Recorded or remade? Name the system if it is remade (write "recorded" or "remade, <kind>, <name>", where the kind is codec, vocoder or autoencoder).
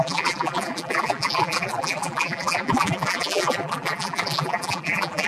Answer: remade, vocoder, BigVGAN v2